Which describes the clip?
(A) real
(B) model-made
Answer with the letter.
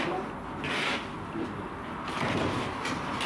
A